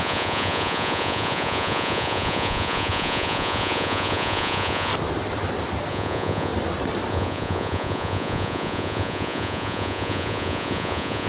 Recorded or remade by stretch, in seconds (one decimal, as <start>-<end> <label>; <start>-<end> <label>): 0.0-4.9 remade; 4.9-5.9 recorded; 5.9-6.5 remade; 6.5-7.1 recorded; 7.1-11.3 remade